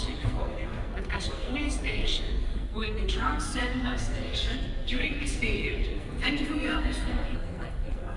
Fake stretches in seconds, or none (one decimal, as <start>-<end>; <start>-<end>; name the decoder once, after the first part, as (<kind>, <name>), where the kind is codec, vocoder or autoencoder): 0.0-8.2 (codec, SNAC)